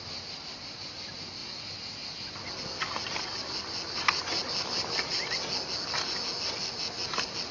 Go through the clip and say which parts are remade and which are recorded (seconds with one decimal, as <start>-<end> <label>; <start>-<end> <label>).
0.0-7.5 recorded